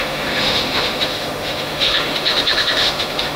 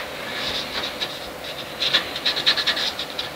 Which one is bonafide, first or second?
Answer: second